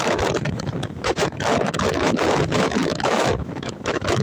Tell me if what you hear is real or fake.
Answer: fake